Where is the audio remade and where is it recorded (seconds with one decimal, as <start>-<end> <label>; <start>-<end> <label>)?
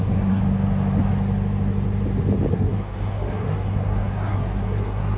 0.0-0.4 remade; 0.4-2.5 recorded; 2.5-5.2 remade